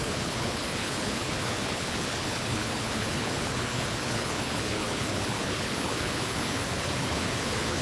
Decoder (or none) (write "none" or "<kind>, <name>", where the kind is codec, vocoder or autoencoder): codec, HILCodec